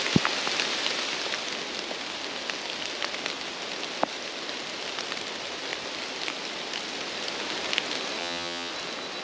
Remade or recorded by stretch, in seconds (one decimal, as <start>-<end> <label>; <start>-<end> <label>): 0.0-8.2 recorded; 8.2-8.7 remade; 8.7-9.2 recorded